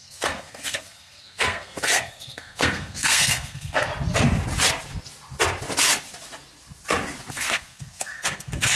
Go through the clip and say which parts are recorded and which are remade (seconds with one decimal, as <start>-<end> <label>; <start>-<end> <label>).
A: 0.0-3.9 remade; 3.9-7.3 recorded; 7.3-8.8 remade